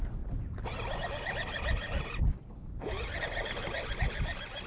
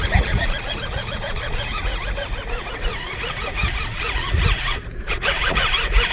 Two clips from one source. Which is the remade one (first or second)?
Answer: second